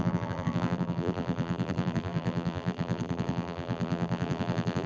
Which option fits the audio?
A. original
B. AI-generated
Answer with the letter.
B